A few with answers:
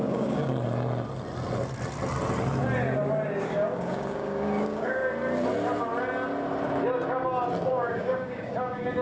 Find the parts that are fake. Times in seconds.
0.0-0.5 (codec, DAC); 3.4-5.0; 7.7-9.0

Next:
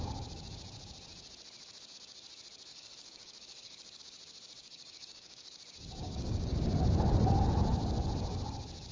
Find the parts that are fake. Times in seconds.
2.7-4.0 (codec, DAC); 4.6-5.6; 6.0-6.7

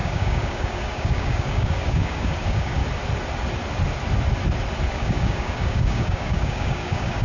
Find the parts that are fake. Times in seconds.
0.0-2.8 (codec, DAC); 4.9-7.2

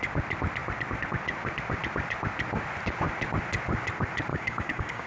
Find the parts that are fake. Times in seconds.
4.3-5.1 (codec, DAC)

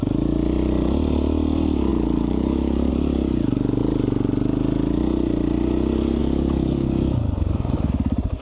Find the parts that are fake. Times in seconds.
1.9-2.9 (codec, DAC); 6.2-7.9

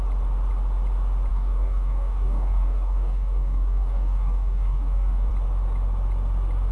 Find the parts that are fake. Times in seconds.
1.3-5.3 (codec, DAC)

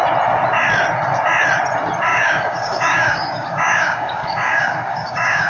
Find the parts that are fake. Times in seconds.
2.1-5.5 (codec, DAC)

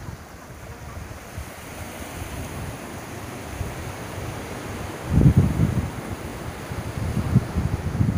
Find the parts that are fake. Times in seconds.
none